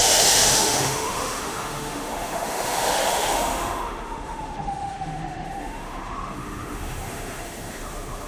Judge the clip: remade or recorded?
remade